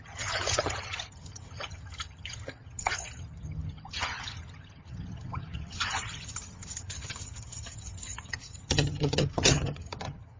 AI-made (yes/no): yes